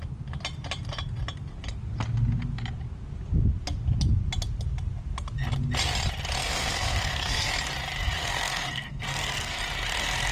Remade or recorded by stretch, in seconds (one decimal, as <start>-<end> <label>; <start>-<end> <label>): 0.0-6.4 recorded; 6.4-7.5 remade; 7.5-8.2 recorded; 8.2-9.6 remade; 9.6-10.3 recorded